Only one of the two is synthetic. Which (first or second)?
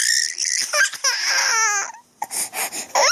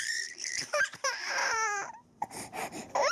second